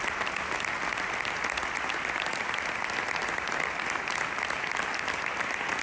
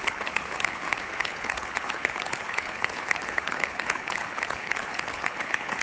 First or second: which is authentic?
first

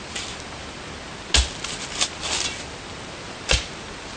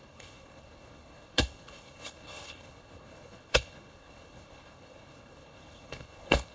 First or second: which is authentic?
first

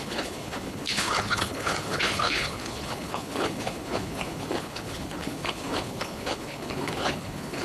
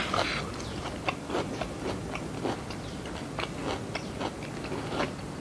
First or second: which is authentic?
second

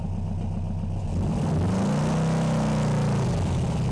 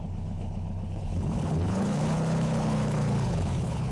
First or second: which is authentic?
first